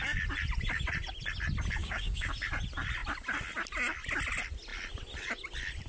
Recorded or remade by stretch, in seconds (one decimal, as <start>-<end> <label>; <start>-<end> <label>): 0.0-1.8 recorded; 1.8-2.3 remade; 2.3-5.9 recorded